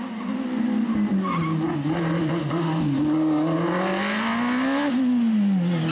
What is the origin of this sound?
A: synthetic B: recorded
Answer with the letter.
B